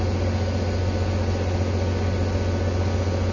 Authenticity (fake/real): real